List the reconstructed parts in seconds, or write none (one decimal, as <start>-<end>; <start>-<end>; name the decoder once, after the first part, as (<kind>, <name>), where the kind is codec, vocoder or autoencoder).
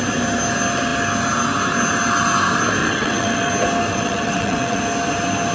2.8-3.5 (vocoder, WaveNeXt); 3.9-4.8